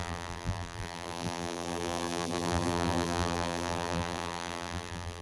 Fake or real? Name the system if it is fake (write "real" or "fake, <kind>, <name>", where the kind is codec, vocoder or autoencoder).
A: fake, vocoder, BigVGAN v2